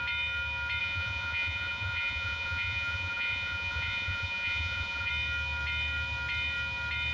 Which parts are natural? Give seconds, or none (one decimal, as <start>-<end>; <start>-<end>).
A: 0.0-0.8; 5.1-7.1